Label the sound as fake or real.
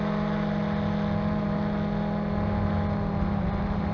real